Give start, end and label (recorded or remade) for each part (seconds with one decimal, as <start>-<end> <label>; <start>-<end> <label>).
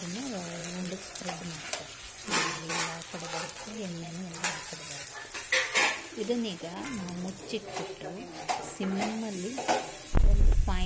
0.0-0.6 recorded; 0.6-2.7 remade; 2.7-3.3 recorded; 3.3-4.8 remade; 4.8-10.9 recorded